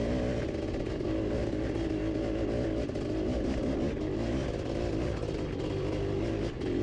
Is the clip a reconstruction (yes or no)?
no